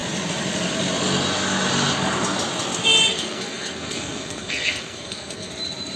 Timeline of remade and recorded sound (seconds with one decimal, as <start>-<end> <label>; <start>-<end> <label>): 0.0-3.1 recorded; 3.1-5.5 remade; 5.5-6.0 recorded